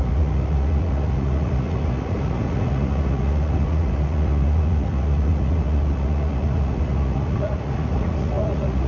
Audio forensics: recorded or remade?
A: remade